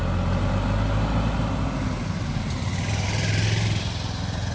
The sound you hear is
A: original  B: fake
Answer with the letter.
A